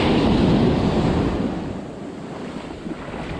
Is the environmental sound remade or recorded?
recorded